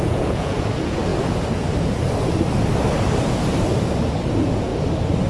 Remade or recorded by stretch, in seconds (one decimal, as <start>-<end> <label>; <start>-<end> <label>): 0.0-1.1 remade; 1.1-4.3 recorded; 4.3-4.7 remade; 4.7-5.3 recorded

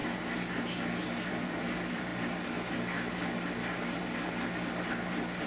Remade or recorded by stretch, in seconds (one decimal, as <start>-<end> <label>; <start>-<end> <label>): 0.0-1.2 recorded; 1.2-2.1 remade; 2.1-5.5 recorded

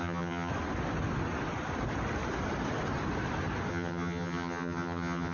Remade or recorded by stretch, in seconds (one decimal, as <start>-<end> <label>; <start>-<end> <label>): 0.0-0.5 remade; 0.5-3.7 recorded; 3.7-5.3 remade

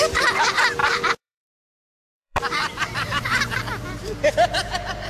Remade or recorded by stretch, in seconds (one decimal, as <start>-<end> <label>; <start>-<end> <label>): 0.0-0.8 recorded; 0.8-3.6 remade; 3.6-5.1 recorded

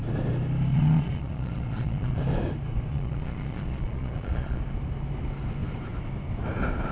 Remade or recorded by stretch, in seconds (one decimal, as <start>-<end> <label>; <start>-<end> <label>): 0.0-0.7 recorded; 0.7-2.2 remade; 2.2-2.9 recorded; 2.9-4.6 remade; 4.6-6.9 recorded

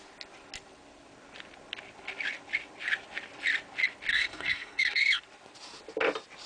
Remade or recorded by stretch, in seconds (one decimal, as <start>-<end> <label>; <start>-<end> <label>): 0.0-4.1 recorded; 4.1-5.2 remade; 5.2-6.5 recorded